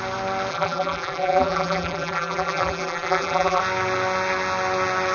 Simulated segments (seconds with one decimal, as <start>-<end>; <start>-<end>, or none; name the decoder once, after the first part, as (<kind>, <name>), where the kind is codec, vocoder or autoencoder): 0.5-3.6 (vocoder, BigVGAN v2)